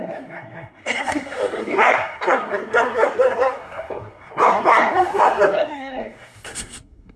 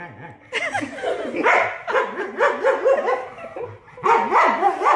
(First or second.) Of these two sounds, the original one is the second